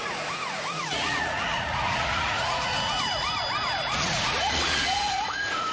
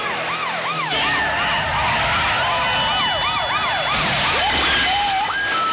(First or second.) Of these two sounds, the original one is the second